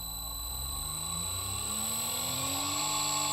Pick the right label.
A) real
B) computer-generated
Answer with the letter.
A